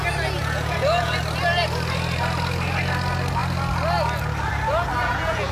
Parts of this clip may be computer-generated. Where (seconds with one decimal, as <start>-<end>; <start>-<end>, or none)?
0.4-1.2; 5.0-5.5